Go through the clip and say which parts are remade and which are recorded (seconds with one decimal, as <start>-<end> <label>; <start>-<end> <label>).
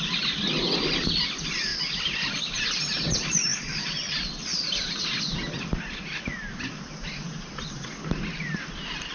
0.0-1.7 recorded; 1.7-2.4 remade; 2.4-3.5 recorded; 3.5-5.2 remade; 5.2-6.3 recorded; 6.3-6.8 remade; 6.8-9.1 recorded